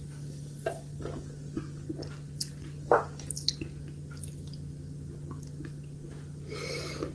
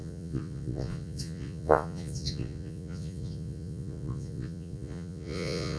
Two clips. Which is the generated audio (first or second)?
second